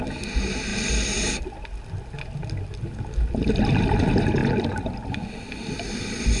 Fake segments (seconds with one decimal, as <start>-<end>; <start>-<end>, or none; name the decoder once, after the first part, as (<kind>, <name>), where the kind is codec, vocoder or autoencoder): 4.4-5.3 (vocoder, BigVGAN v2)